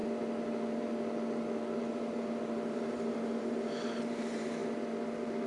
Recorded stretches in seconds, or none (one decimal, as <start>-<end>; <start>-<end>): 0.0-1.8; 4.6-5.5